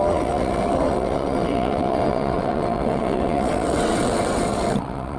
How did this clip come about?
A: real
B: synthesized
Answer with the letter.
B